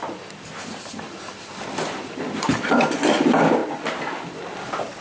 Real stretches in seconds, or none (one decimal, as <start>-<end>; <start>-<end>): none

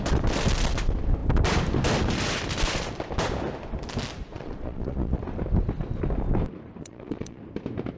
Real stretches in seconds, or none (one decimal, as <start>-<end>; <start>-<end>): 0.0-4.3; 5.2-6.8; 7.4-8.0

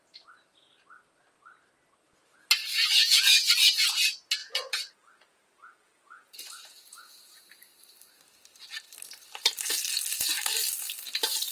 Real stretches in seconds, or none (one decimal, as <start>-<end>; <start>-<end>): 0.0-2.7; 3.5-4.4; 7.4-11.5

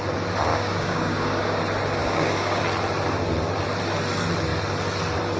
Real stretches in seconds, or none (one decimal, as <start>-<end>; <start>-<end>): 0.0-0.5; 1.6-2.0; 2.6-5.4

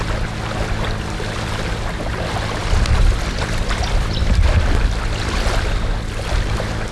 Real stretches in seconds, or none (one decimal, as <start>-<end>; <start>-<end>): 0.0-2.6; 4.5-6.9

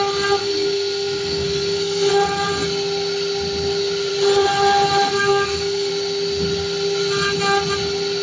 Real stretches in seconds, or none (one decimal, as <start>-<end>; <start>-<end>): 0.0-0.4; 2.1-5.1; 5.9-8.2

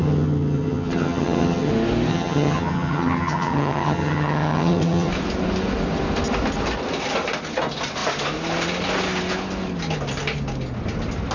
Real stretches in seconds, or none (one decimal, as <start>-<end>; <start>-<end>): 1.7-2.1; 5.1-11.3